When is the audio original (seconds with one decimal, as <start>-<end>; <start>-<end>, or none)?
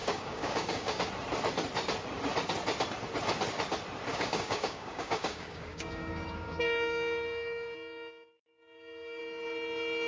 1.1-4.1; 9.2-10.1